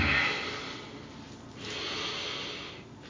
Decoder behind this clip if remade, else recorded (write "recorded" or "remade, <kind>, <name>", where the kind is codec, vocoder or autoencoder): recorded